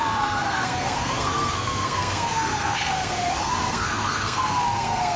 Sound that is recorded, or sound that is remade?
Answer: remade